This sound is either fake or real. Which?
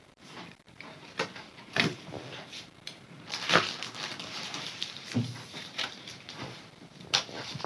fake